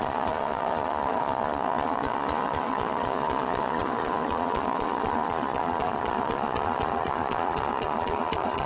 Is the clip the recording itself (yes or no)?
no